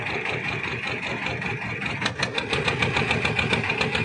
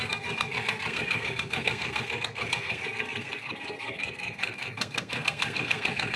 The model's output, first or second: second